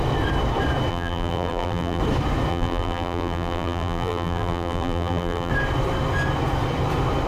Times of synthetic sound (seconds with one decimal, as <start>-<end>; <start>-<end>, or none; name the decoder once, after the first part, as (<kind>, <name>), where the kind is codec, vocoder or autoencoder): 0.9-2.0 (vocoder, BigVGAN v2); 2.5-5.5